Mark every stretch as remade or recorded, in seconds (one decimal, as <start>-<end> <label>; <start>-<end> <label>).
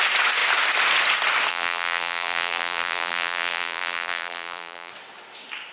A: 0.0-1.5 recorded; 1.5-4.9 remade; 4.9-5.7 recorded